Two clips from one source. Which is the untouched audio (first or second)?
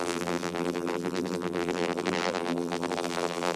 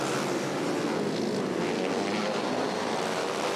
second